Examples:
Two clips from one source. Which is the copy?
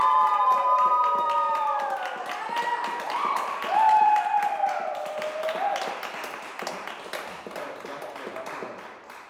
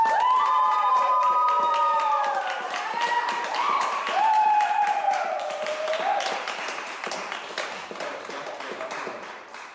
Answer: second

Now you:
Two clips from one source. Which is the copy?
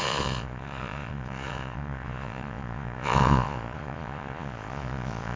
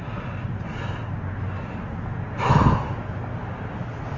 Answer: first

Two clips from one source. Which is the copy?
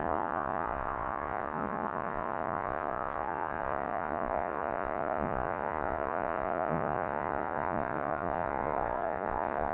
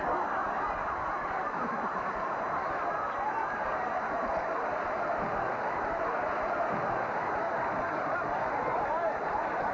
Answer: first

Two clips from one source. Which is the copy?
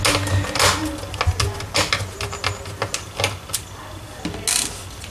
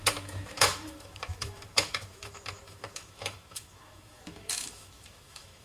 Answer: second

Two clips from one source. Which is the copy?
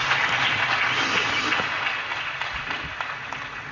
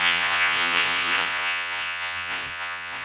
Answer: second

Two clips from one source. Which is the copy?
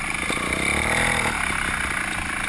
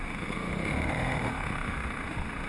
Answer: second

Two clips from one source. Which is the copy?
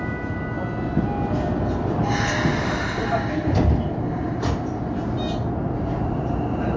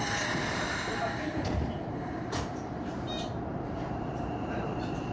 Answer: second